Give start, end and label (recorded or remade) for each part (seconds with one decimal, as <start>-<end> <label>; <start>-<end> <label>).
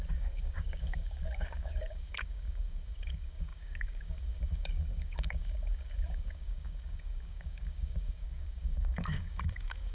0.0-9.9 remade